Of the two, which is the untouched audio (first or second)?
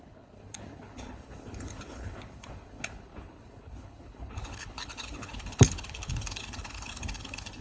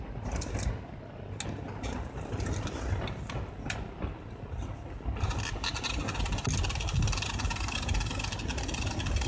second